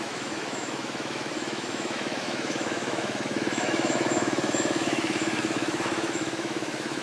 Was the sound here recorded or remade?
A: remade